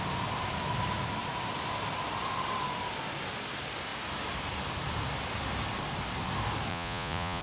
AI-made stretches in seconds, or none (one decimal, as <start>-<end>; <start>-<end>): 6.7-7.4